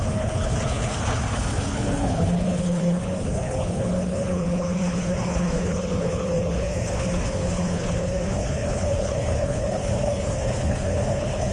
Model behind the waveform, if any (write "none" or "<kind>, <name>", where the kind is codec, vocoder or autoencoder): codec, HILCodec